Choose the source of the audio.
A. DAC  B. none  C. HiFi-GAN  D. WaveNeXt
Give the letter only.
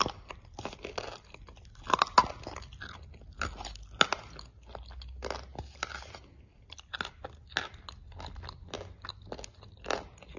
B